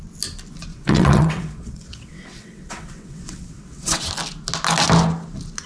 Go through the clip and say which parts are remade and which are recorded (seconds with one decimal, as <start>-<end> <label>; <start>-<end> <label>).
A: 0.0-0.7 recorded; 0.7-4.1 remade; 4.1-5.7 recorded